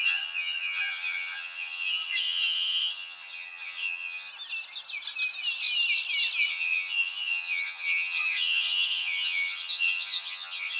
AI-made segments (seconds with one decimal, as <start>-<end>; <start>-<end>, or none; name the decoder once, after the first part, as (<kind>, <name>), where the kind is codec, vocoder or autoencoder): 0.0-4.3 (vocoder, HiFi-GAN); 6.5-10.8